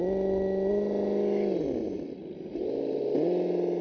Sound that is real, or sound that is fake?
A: real